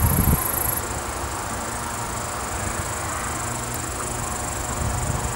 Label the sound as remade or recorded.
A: recorded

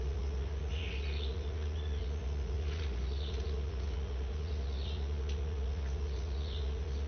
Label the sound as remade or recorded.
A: remade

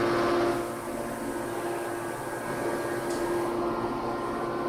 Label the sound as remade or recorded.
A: recorded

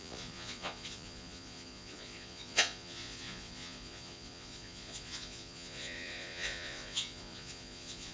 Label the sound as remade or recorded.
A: remade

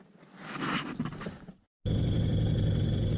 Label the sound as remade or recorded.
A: recorded